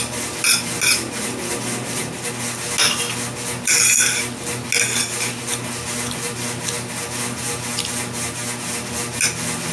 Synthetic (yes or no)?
no